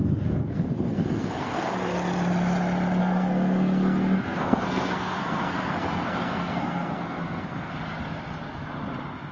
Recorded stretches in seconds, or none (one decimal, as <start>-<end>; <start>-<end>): 1.7-3.0; 7.7-9.3

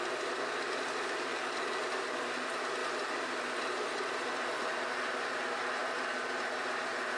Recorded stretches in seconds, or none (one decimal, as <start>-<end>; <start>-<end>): 0.0-1.3; 1.9-2.8; 4.3-7.2

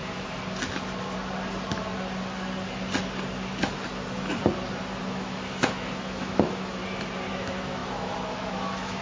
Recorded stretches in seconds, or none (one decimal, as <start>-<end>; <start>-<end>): 0.0-5.0; 6.8-7.3

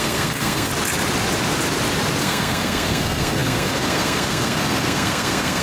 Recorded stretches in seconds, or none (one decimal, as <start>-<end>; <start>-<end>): 0.7-2.2

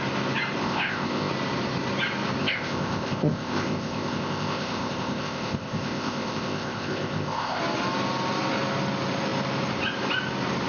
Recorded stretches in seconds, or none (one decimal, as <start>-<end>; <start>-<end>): 0.0-0.6; 1.3-2.4; 7.6-10.7

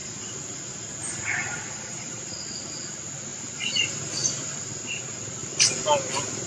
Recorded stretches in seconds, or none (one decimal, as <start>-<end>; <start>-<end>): 0.8-1.5; 2.3-3.3; 4.0-5.4